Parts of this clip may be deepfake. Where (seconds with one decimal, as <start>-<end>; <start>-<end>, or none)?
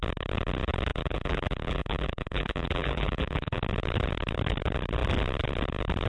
0.9-3.6